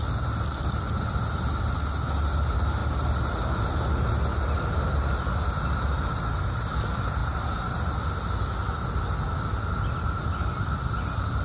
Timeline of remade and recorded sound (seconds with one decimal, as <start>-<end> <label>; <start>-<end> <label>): 0.0-11.4 recorded

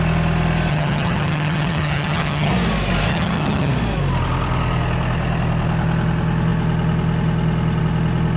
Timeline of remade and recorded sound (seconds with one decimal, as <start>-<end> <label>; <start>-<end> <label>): 0.0-0.7 recorded; 0.7-2.5 remade; 2.5-3.1 recorded; 3.1-3.7 remade; 3.7-8.4 recorded

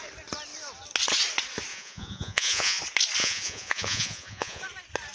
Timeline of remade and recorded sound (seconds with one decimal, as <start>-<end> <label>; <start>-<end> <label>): 0.0-1.7 recorded; 1.7-2.8 remade; 2.8-3.2 recorded; 3.2-4.6 remade; 4.6-5.1 recorded